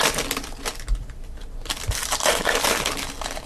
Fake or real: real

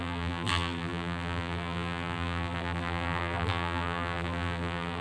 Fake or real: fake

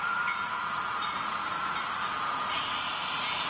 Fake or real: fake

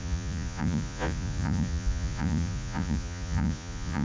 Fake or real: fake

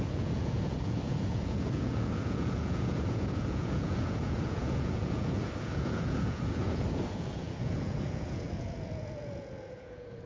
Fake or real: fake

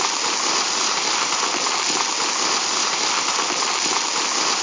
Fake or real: real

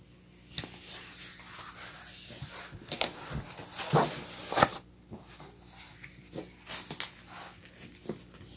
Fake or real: real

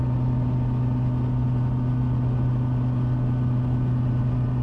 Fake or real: real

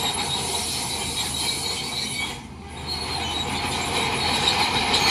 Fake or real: real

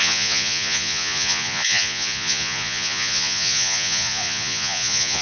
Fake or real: fake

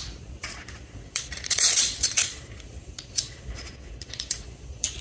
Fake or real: fake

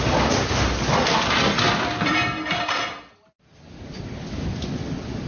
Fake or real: real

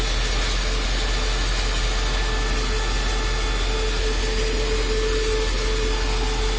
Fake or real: real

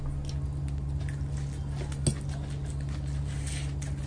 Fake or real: real